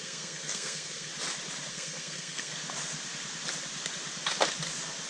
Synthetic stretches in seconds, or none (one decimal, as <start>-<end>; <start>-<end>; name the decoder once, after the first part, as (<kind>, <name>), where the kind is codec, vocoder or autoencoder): 0.0-1.1 (codec, SNAC); 1.7-2.5